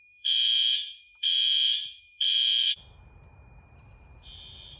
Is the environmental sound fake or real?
fake